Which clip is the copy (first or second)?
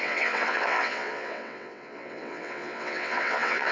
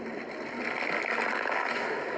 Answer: first